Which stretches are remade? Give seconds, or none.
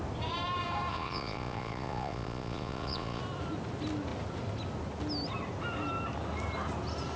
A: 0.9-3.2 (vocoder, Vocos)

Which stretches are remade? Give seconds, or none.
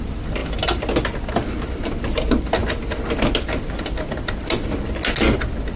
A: none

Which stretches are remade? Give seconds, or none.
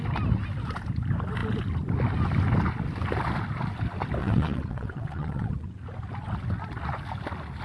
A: 4.2-5.8 (vocoder, WaveNeXt)